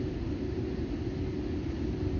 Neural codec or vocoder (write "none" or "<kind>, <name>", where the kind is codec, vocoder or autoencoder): none